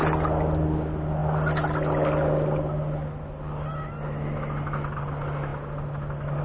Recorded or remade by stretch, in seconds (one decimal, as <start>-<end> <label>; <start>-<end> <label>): 0.0-6.4 recorded